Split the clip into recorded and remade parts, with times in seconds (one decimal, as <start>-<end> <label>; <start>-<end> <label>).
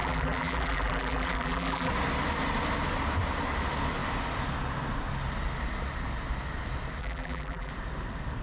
0.0-1.9 remade; 1.9-7.0 recorded; 7.0-7.7 remade; 7.7-8.4 recorded